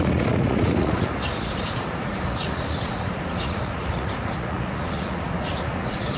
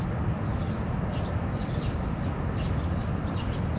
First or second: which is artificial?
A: first